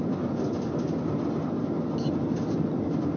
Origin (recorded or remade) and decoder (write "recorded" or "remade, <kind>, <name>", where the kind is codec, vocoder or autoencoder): recorded